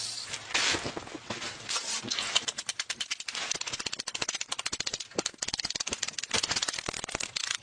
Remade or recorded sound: remade